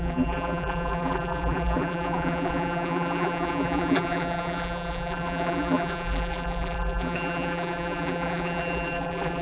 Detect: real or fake fake